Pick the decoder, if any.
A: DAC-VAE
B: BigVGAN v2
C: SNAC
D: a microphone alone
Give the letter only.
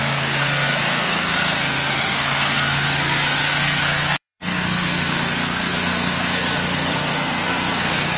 C